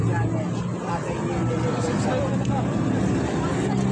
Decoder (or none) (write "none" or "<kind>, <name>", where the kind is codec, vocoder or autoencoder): none